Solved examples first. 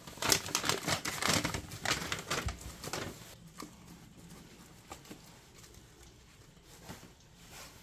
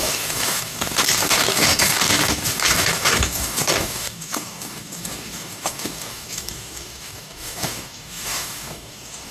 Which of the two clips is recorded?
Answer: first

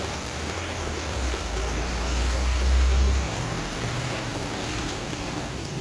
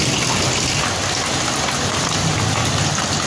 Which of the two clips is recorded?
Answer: second